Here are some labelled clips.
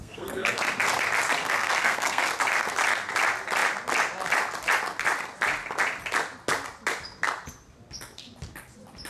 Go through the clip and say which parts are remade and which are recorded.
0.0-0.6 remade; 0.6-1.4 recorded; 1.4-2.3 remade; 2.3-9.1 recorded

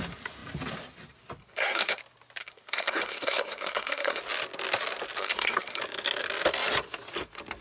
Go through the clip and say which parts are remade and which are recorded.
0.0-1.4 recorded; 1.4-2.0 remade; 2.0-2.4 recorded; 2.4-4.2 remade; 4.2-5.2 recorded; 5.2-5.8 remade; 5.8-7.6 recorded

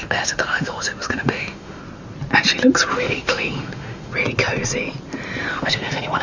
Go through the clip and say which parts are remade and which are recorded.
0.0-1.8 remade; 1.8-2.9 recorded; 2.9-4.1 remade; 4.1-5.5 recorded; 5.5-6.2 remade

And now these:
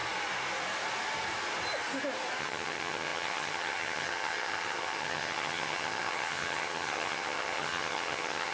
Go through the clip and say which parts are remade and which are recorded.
0.0-2.4 recorded; 2.4-8.5 remade

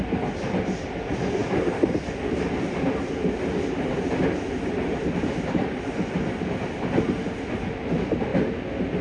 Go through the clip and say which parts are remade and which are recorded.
0.0-9.0 recorded